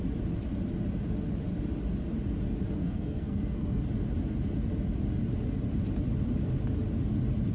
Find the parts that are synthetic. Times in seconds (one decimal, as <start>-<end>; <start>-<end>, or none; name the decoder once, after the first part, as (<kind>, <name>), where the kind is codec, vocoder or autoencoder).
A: 2.8-3.9 (codec, SNAC)

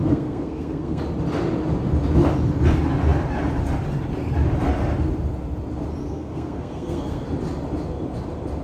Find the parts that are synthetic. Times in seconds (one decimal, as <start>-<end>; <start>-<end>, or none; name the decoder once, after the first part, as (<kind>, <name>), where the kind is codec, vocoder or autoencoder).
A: 0.0-1.0 (codec, SNAC); 6.0-7.2

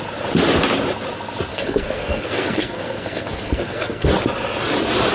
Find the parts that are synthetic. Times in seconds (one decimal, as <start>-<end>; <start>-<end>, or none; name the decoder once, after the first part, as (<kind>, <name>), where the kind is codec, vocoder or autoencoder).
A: 1.5-4.1 (codec, SNAC)